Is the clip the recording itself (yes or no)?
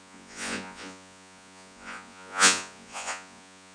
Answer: no